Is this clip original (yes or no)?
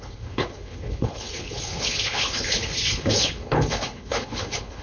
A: no